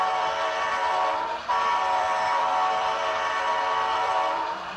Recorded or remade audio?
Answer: remade